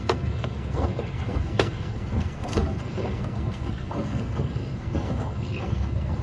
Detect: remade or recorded remade